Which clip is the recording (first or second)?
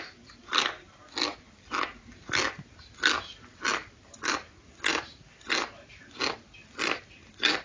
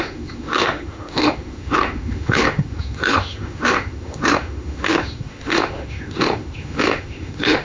first